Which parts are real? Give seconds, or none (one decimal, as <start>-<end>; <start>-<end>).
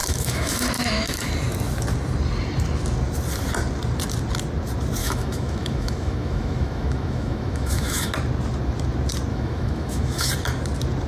1.3-5.0; 8.1-9.3; 10.3-11.1